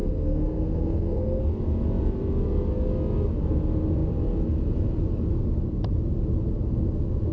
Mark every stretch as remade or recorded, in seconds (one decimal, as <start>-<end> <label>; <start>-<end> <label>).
0.0-1.4 remade; 1.4-7.3 recorded